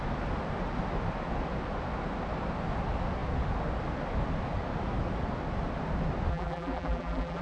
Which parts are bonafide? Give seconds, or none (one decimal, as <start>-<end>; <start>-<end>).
0.0-6.3